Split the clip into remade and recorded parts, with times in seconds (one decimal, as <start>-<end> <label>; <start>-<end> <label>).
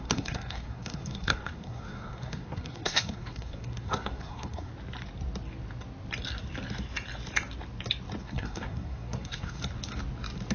0.0-4.7 remade; 4.7-8.2 recorded; 8.2-9.6 remade; 9.6-10.5 recorded